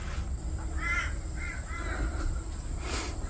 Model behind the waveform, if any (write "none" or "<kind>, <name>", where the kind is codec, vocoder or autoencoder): none